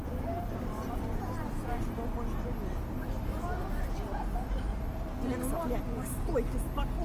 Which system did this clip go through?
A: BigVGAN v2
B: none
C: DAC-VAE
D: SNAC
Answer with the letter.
B